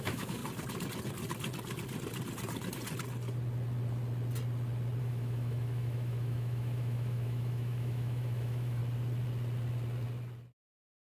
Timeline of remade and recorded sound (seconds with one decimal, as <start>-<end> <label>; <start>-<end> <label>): 0.0-0.4 remade; 0.4-5.0 recorded; 5.0-8.8 remade; 8.8-11.1 recorded